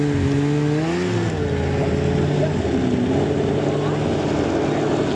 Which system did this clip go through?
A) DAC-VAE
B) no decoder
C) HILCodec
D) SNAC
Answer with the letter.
B